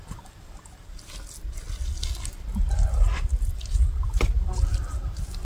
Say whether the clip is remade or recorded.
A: recorded